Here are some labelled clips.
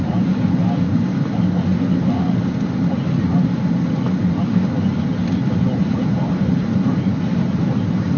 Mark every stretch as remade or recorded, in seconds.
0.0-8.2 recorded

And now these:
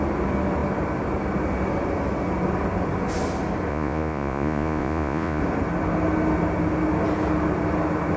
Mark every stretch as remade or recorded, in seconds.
0.0-3.7 recorded; 3.7-5.4 remade; 5.4-8.2 recorded

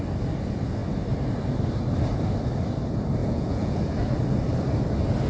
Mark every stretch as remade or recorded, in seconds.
0.0-3.2 recorded; 3.2-3.8 remade; 3.8-5.3 recorded

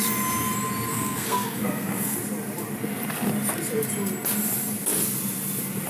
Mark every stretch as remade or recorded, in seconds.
0.0-0.9 recorded; 0.9-2.2 remade; 2.2-5.9 recorded

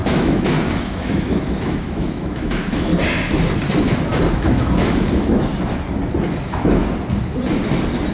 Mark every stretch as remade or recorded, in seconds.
0.0-2.9 remade; 2.9-4.3 recorded; 4.3-5.5 remade; 5.5-6.2 recorded; 6.2-6.8 remade; 6.8-8.1 recorded

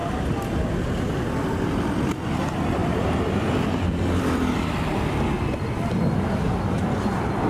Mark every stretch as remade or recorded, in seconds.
0.0-1.6 remade; 1.6-2.8 recorded; 2.8-5.5 remade; 5.5-7.5 recorded

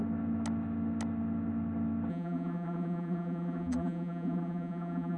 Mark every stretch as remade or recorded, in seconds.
0.0-2.1 recorded; 2.1-5.2 remade

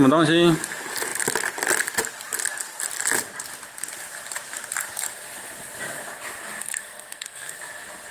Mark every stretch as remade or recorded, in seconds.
0.0-6.6 recorded; 6.6-7.6 remade; 7.6-8.1 recorded